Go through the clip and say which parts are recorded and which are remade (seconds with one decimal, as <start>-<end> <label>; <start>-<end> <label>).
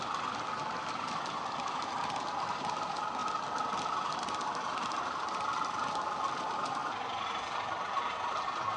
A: 0.0-8.8 remade